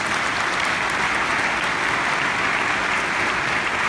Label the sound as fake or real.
real